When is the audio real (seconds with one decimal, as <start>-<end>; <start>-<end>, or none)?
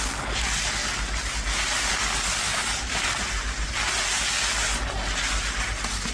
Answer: 0.0-2.5; 3.7-6.1